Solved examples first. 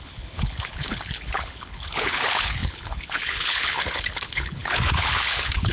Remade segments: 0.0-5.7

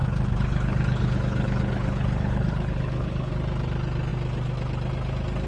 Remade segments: 0.0-3.3

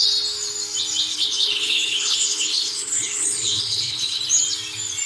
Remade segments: 1.1-4.2

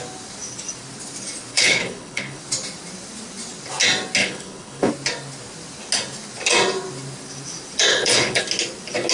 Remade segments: 1.5-2.4; 4.2-4.9; 7.9-8.4

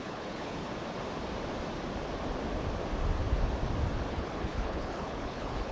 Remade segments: 0.0-0.7; 4.1-5.7